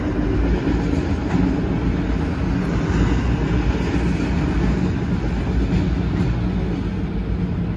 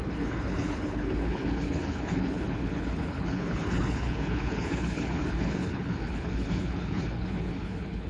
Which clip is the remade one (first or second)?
second